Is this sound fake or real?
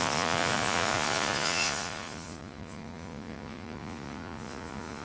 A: fake